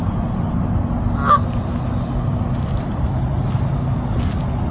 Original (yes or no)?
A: yes